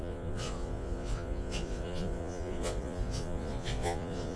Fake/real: fake